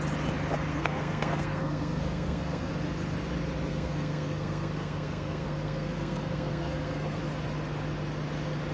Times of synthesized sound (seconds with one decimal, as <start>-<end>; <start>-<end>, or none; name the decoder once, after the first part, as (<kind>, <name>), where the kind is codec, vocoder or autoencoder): 0.7-2.7 (codec, SNAC); 3.7-7.2